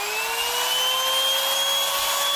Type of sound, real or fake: real